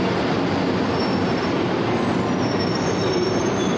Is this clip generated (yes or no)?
yes